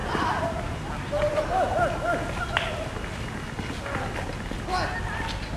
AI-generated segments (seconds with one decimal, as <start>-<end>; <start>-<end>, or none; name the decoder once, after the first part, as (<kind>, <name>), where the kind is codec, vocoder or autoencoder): none